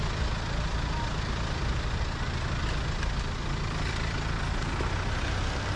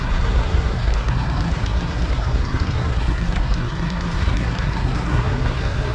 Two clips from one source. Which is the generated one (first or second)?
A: second